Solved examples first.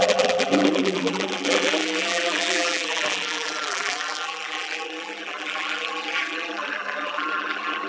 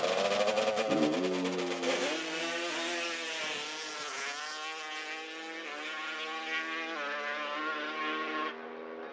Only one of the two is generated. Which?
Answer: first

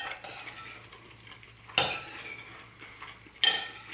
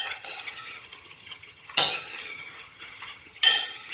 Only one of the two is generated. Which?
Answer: second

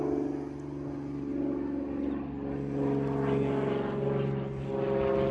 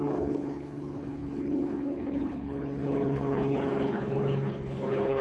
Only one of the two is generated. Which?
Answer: second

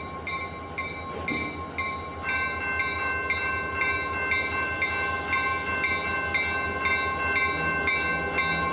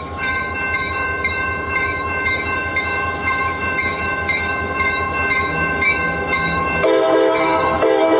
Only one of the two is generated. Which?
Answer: second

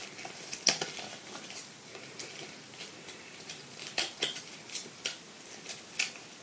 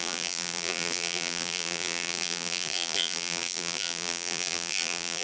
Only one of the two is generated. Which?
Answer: second